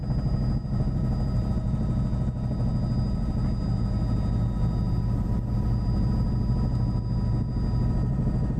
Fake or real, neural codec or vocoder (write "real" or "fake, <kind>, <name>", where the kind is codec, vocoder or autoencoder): real